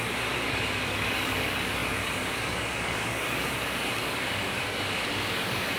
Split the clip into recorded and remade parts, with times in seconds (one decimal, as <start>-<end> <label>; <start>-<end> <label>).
0.0-5.8 remade